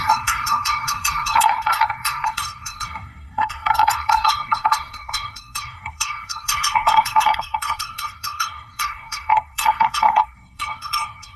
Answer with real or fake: fake